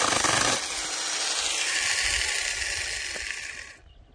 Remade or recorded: recorded